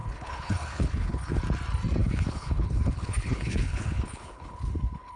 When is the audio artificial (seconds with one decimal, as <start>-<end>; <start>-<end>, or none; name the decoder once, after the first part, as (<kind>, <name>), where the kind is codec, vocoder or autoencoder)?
0.0-1.4 (codec, HILCodec); 2.0-5.2